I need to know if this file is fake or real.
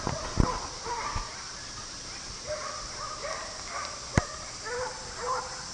real